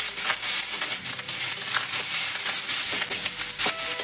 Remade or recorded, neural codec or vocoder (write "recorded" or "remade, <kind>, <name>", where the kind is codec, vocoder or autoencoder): recorded